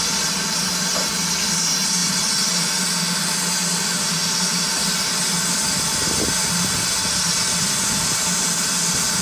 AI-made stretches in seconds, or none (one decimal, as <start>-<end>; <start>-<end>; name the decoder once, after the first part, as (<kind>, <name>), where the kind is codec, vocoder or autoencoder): none